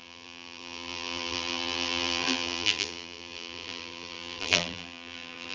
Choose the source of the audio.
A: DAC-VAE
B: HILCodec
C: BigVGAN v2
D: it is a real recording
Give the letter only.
C